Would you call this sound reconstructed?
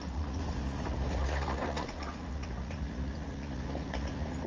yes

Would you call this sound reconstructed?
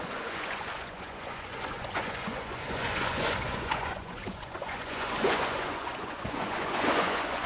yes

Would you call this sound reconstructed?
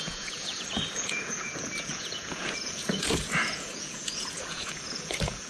yes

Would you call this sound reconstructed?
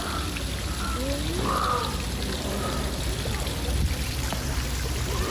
no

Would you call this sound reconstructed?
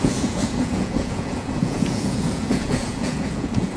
yes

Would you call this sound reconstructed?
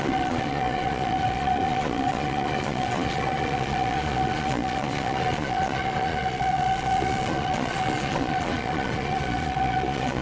yes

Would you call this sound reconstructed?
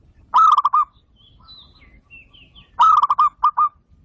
no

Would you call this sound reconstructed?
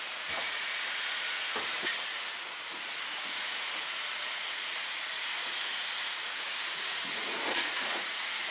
yes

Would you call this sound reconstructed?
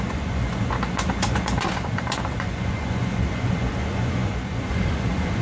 yes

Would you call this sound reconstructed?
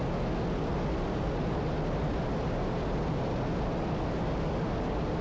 no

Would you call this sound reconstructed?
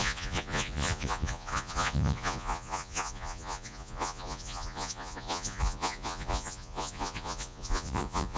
yes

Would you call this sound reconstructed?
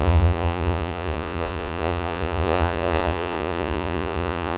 yes